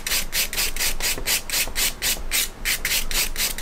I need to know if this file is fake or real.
real